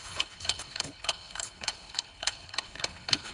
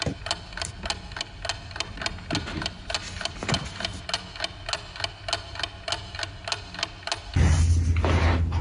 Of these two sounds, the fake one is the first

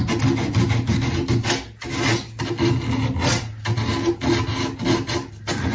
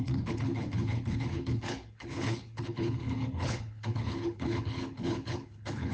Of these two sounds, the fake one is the second